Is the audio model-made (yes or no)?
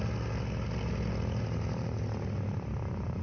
no